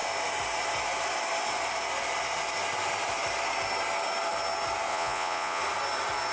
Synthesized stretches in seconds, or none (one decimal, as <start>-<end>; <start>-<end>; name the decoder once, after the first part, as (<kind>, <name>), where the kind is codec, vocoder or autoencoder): 4.9-5.6 (vocoder, Vocos)